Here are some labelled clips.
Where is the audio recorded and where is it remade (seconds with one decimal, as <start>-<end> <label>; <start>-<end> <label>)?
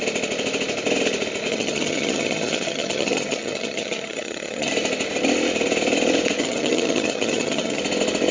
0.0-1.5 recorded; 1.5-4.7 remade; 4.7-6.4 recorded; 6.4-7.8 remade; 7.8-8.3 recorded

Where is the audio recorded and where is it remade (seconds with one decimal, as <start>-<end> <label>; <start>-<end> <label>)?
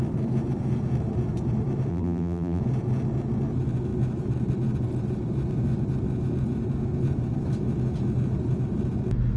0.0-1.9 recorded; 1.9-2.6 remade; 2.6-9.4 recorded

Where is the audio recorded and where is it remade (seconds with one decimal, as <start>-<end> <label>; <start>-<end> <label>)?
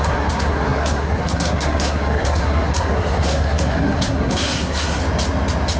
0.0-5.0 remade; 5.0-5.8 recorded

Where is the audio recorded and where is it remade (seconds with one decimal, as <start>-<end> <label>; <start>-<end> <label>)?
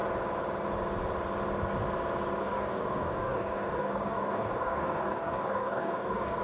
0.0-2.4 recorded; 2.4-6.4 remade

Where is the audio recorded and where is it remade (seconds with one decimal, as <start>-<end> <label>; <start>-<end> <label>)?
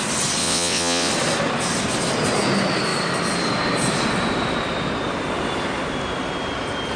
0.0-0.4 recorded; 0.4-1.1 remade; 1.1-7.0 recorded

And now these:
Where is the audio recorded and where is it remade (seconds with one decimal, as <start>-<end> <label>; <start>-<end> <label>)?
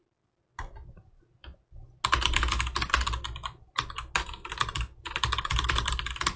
0.0-6.4 recorded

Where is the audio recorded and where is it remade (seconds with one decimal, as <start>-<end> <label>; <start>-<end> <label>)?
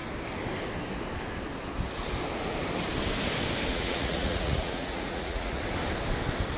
0.0-3.7 recorded; 3.7-5.6 remade; 5.6-6.6 recorded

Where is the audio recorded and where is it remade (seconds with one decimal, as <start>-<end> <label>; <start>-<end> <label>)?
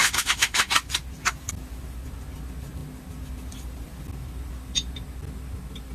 0.0-0.7 remade; 0.7-5.9 recorded